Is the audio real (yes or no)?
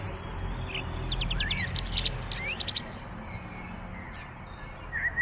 yes